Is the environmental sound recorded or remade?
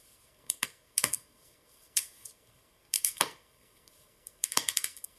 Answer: remade